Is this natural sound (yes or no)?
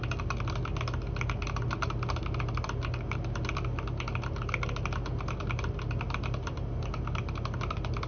yes